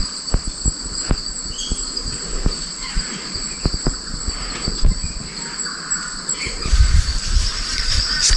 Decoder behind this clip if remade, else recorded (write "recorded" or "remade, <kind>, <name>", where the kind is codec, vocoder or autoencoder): remade, vocoder, BigVGAN v2